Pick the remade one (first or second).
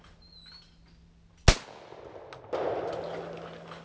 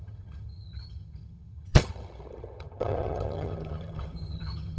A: second